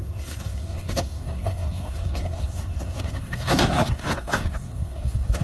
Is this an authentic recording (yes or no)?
no